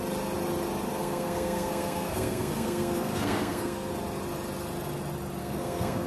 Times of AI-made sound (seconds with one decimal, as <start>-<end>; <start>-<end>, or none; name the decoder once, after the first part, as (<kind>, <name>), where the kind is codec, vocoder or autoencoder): 1.0-3.9 (codec, SNAC); 5.4-6.1